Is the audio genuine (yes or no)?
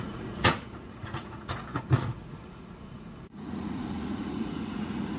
no